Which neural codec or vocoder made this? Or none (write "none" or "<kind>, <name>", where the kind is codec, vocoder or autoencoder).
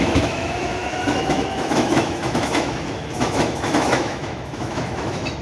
autoencoder, DAC-VAE